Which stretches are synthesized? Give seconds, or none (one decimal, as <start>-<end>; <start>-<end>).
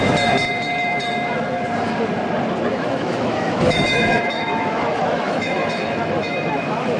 2.7-7.0